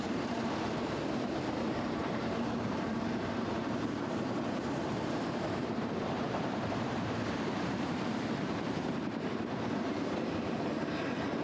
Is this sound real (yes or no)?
no